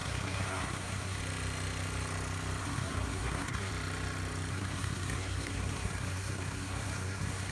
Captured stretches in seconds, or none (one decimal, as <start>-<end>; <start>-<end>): 1.2-2.6; 3.7-4.5